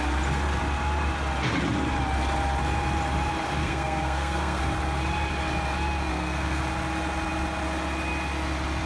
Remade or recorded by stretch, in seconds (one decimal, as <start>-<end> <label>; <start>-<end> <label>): 0.0-3.6 recorded; 3.6-4.6 remade; 4.6-6.1 recorded; 6.1-6.6 remade; 6.6-8.9 recorded